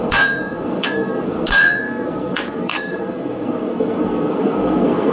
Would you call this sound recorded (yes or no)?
no